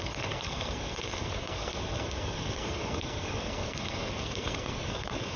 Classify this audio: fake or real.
fake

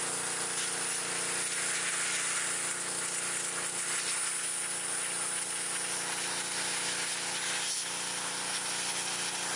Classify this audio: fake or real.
real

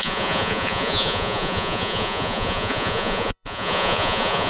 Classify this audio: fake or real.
fake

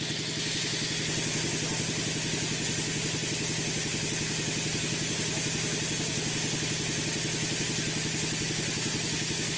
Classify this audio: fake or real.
real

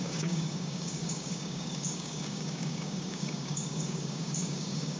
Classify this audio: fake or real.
fake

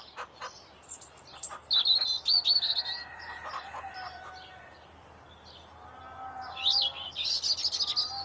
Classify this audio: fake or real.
real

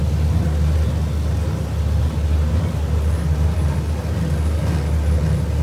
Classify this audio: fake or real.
real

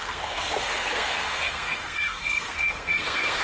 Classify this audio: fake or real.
fake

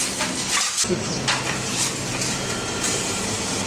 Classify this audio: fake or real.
fake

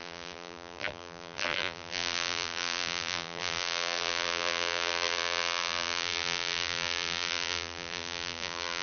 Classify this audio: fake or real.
fake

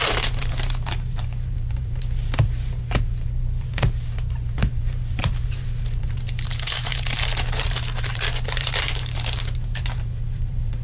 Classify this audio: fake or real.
fake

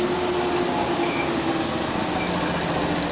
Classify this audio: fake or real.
real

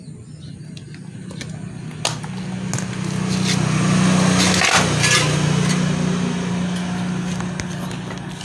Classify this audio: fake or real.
real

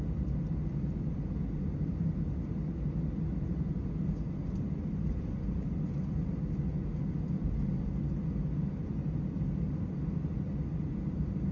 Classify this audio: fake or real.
real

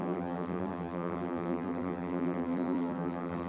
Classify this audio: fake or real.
fake